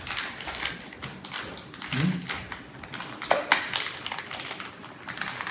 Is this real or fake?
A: real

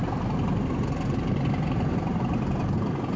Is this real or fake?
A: real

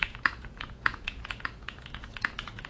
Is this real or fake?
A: fake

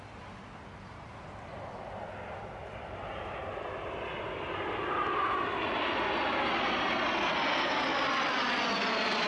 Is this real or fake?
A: real